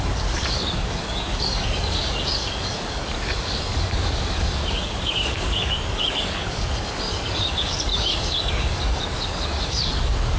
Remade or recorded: remade